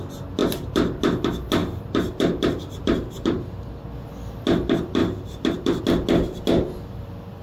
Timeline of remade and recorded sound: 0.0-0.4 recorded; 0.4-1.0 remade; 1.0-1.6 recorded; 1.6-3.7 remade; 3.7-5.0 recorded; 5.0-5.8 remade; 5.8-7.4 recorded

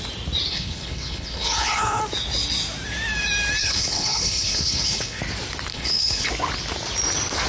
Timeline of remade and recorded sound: 0.0-0.5 recorded; 0.5-2.0 remade; 2.0-3.6 recorded; 3.6-5.2 remade; 5.2-5.7 recorded; 5.7-6.3 remade; 6.3-7.5 recorded

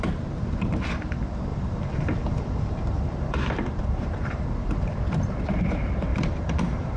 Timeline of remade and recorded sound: 0.0-1.5 recorded; 1.5-5.0 remade; 5.0-6.1 recorded; 6.1-7.0 remade

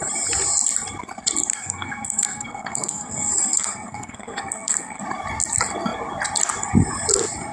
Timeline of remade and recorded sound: 0.0-1.5 recorded; 1.5-5.0 remade; 5.0-7.5 recorded

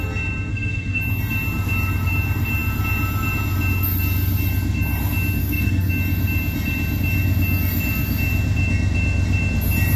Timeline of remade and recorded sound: 0.0-0.5 recorded; 0.5-1.0 remade; 1.0-5.4 recorded; 5.4-5.9 remade; 5.9-10.0 recorded